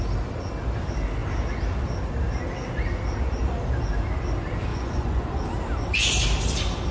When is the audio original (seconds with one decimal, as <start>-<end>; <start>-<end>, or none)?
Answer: 0.0-4.7; 5.4-6.9